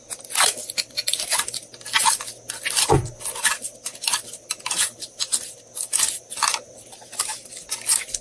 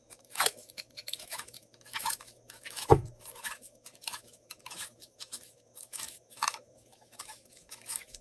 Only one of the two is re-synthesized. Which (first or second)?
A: second